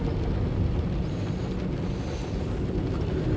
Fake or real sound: real